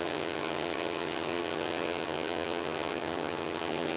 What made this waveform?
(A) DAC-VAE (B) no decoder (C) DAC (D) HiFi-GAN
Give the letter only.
D